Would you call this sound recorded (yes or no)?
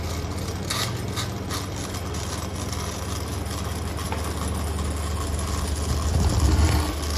yes